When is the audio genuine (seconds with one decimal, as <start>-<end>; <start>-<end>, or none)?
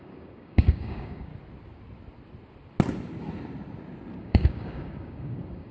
1.3-4.2